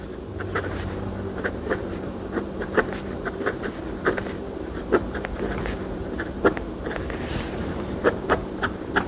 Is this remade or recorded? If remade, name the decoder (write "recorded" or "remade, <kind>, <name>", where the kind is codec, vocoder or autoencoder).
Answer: remade, vocoder, BigVGAN v2